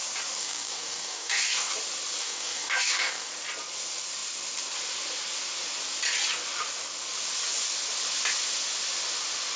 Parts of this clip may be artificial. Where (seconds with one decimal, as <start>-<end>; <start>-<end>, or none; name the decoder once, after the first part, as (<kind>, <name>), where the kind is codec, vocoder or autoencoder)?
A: 0.4-1.7 (codec, DAC); 2.2-3.3